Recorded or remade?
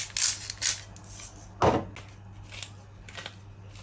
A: recorded